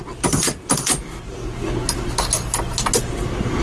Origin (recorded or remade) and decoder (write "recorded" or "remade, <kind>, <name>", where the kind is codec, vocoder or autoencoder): recorded